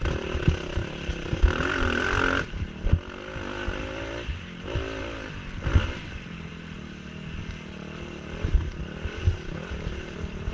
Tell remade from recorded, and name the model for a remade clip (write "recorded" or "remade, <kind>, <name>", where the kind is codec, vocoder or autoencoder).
recorded